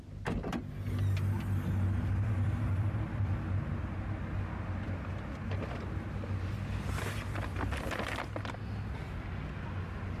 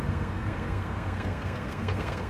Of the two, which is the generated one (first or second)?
second